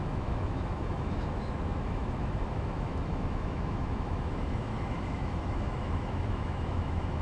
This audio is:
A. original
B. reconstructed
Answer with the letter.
B